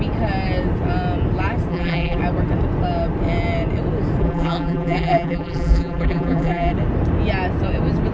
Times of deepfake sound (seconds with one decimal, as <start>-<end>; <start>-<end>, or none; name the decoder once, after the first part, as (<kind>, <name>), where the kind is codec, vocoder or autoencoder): 1.7-2.2 (vocoder, BigVGAN v2); 4.2-6.7